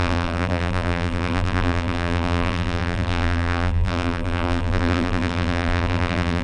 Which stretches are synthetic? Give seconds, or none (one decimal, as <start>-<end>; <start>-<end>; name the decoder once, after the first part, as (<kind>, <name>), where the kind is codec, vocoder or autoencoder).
0.0-6.4 (vocoder, BigVGAN v2)